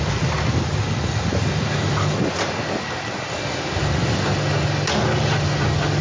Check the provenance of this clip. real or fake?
real